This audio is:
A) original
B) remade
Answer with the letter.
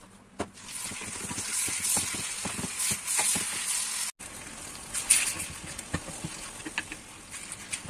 A